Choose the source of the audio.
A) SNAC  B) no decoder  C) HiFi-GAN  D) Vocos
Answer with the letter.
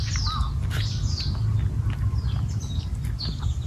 B